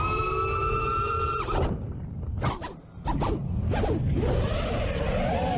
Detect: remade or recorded remade